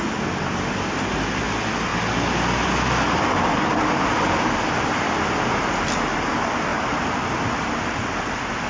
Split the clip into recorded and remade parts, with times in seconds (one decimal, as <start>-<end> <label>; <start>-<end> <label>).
0.0-8.7 recorded